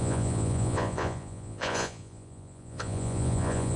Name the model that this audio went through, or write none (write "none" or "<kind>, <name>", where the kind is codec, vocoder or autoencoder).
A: vocoder, Vocos